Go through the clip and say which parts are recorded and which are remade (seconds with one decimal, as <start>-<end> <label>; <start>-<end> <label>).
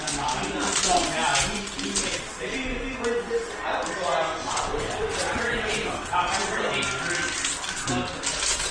0.0-4.4 recorded; 4.4-6.7 remade; 6.7-8.7 recorded